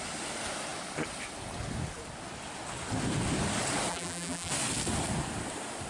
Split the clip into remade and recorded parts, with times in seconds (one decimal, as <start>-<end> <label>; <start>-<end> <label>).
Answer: 0.0-3.9 recorded; 3.9-4.5 remade; 4.5-5.9 recorded